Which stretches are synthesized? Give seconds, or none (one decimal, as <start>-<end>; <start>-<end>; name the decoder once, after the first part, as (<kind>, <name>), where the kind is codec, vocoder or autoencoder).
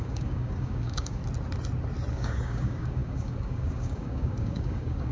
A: 0.0-1.2 (codec, DAC); 2.1-5.1